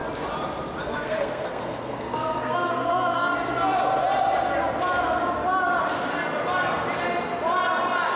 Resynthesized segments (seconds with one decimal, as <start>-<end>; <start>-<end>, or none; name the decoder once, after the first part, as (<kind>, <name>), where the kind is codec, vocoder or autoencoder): 0.8-3.3 (codec, SNAC)